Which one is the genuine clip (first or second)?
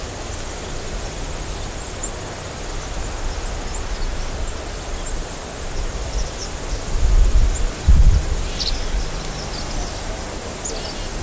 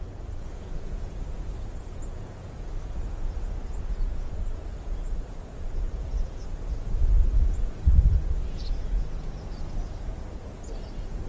first